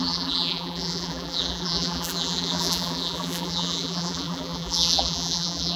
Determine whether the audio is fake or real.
fake